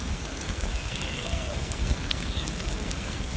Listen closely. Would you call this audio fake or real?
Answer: fake